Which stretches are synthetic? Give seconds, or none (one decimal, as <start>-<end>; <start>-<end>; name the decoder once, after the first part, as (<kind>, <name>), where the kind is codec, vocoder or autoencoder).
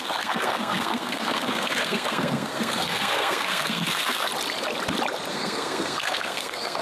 0.0-4.3 (codec, SNAC); 5.3-6.8